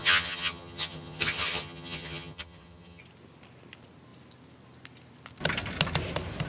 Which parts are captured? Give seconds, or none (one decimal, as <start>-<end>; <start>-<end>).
3.0-6.5